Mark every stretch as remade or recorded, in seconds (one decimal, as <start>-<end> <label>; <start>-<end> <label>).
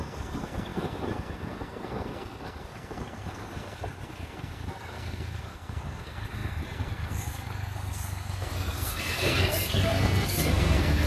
0.0-11.1 remade